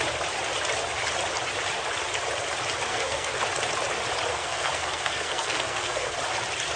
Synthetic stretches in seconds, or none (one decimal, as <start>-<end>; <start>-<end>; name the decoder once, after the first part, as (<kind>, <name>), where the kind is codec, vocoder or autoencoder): 2.9-3.4 (codec, SNAC); 4.3-6.2